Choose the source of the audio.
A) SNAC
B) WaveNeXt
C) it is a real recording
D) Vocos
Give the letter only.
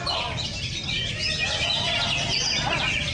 C